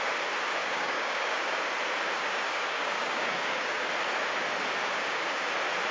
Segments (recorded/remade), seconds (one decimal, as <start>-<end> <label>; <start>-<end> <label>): 0.0-0.6 recorded; 0.6-1.6 remade; 1.6-2.2 recorded; 2.2-3.9 remade; 3.9-4.8 recorded; 4.8-5.5 remade; 5.5-5.9 recorded